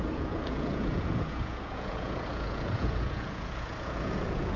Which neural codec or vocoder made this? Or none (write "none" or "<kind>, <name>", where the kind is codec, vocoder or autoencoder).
vocoder, Vocos